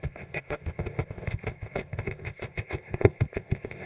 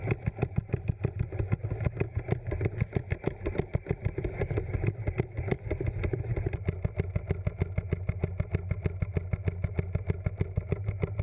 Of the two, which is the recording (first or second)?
second